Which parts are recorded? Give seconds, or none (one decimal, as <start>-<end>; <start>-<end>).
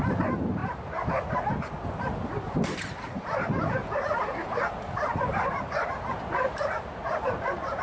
0.0-3.8; 6.9-7.8